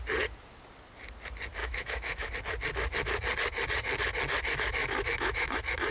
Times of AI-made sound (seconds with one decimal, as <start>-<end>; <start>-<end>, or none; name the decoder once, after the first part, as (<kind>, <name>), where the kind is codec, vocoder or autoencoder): 1.6-2.3 (autoencoder, DAC-VAE); 4.8-5.5